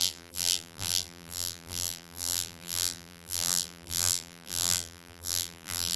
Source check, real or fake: fake